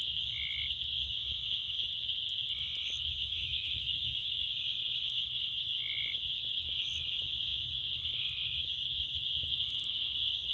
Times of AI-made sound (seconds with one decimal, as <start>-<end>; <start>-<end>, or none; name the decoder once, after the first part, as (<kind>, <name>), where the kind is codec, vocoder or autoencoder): 3.2-4.5 (autoencoder, DAC-VAE)